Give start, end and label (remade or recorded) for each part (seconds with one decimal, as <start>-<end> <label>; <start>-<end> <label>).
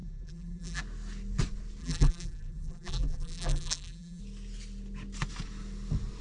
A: 0.0-0.8 remade; 0.8-1.8 recorded; 1.8-4.2 remade; 4.2-6.2 recorded